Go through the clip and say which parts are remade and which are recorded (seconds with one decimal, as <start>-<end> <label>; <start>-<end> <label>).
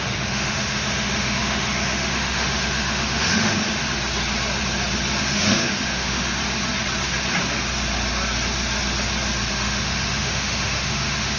0.0-3.8 remade; 3.8-5.2 recorded; 5.2-6.4 remade; 6.4-9.5 recorded; 9.5-11.4 remade